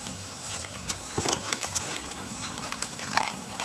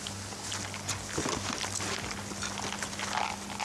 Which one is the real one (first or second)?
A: second